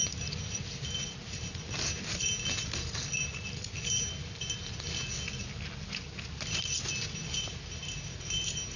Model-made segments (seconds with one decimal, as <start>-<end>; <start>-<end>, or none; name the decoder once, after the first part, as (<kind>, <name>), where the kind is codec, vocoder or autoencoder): none